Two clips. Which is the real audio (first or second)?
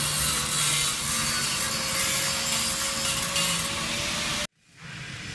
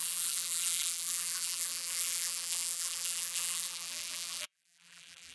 first